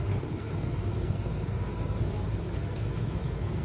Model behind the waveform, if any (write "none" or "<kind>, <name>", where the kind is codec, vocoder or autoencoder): codec, SNAC